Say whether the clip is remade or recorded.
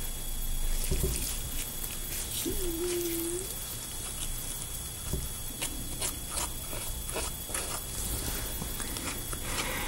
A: recorded